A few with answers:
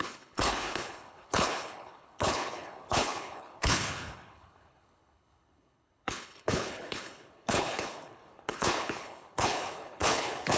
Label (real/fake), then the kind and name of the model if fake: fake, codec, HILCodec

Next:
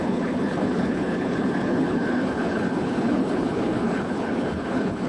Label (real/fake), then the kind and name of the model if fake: fake, codec, HILCodec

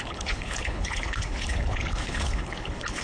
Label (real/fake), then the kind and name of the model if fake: fake, codec, HILCodec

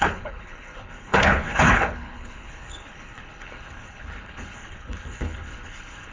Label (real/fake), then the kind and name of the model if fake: fake, codec, HILCodec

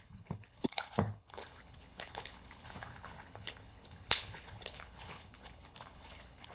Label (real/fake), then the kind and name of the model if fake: fake, codec, HILCodec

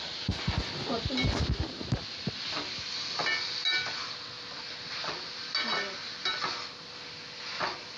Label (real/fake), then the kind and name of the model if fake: real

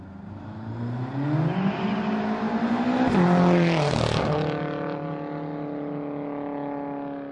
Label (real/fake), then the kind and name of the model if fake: real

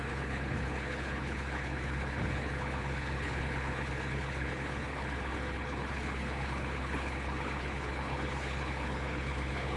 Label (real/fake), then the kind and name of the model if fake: fake, codec, HILCodec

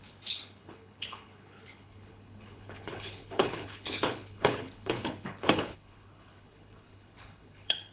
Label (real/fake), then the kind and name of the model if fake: fake, codec, HILCodec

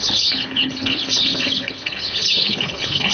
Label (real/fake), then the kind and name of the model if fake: fake, codec, HILCodec